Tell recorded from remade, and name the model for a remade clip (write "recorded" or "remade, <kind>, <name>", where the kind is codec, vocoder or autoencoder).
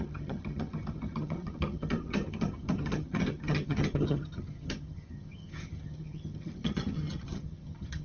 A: remade, vocoder, HiFi-GAN